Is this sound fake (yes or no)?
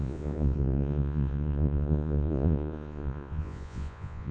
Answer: yes